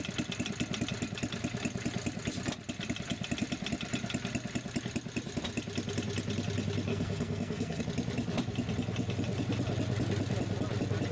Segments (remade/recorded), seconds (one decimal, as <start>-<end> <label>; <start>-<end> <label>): 0.0-6.9 recorded; 6.9-7.8 remade; 7.8-11.1 recorded